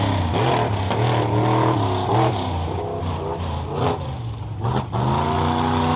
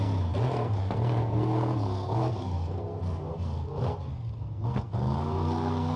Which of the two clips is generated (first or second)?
second